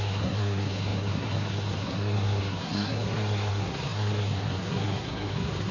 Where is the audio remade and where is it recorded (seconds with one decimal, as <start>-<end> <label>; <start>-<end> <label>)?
0.0-5.7 remade